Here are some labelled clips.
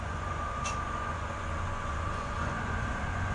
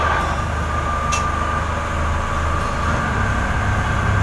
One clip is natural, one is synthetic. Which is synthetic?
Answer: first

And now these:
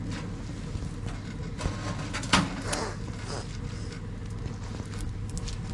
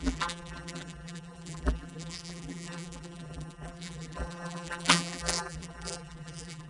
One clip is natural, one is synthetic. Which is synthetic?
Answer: second